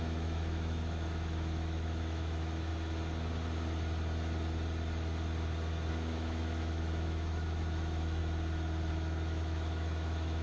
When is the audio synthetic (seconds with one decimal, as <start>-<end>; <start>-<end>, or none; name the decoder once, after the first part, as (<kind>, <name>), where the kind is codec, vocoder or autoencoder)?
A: 0.0-2.7 (autoencoder, DAC-VAE); 5.9-8.2; 8.9-10.4